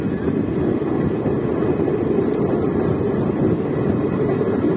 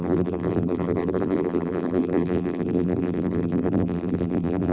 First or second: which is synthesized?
second